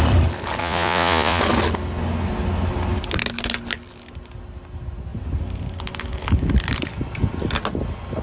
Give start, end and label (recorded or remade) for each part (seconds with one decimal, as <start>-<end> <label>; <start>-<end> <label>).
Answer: 0.0-0.6 recorded; 0.6-1.4 remade; 1.4-8.2 recorded